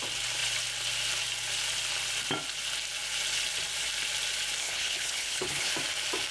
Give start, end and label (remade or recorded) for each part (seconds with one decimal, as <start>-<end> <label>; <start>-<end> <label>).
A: 0.0-4.6 recorded; 4.6-5.7 remade; 5.7-6.3 recorded